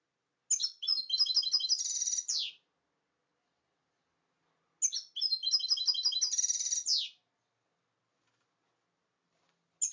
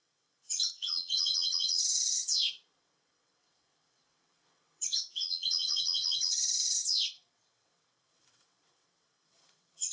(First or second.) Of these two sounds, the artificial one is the second